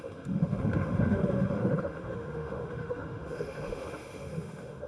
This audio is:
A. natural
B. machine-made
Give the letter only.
B